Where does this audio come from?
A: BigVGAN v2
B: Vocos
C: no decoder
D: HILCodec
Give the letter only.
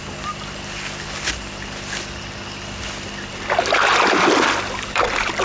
C